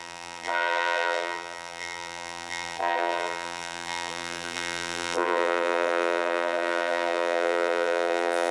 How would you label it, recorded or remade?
remade